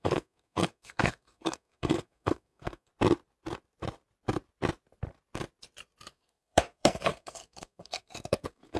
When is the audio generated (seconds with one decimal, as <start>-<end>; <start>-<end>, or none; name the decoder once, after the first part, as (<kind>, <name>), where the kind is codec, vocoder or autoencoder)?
0.0-2.9 (codec, SNAC); 6.1-8.8